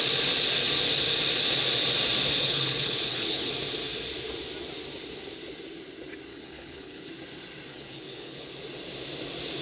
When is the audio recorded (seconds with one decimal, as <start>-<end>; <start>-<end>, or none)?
0.0-2.4; 3.5-6.3; 7.1-7.7; 8.5-9.6